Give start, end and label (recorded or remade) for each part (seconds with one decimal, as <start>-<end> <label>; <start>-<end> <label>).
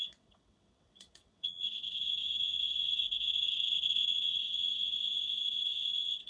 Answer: 0.0-6.3 remade